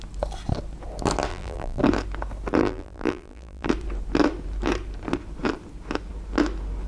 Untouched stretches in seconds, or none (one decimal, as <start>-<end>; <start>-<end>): 0.0-1.3; 1.8-2.6; 3.7-6.9